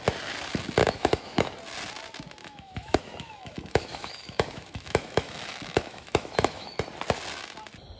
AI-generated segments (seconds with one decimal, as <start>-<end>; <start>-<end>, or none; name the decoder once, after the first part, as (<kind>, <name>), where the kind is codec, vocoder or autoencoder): 0.8-1.5 (autoencoder, DAC-VAE); 2.4-6.8